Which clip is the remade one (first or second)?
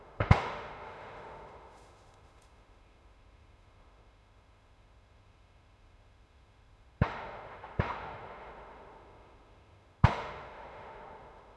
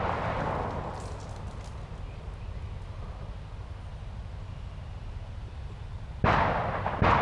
first